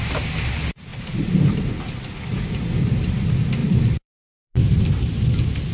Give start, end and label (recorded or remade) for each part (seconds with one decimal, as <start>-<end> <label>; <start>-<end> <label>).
0.0-0.9 recorded; 0.9-1.6 remade; 1.6-2.3 recorded; 2.3-3.1 remade; 3.1-3.6 recorded; 3.6-5.2 remade; 5.2-5.7 recorded